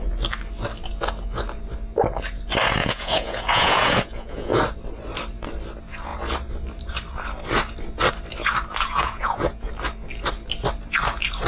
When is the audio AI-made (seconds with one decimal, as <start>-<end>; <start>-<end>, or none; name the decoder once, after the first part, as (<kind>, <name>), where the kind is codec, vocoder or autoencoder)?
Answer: 2.8-4.6 (vocoder, Vocos); 8.7-9.7